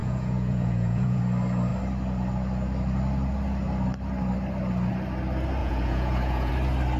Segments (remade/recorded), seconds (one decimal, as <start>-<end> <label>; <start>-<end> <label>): 0.0-1.2 remade; 1.2-5.6 recorded; 5.6-6.5 remade; 6.5-7.0 recorded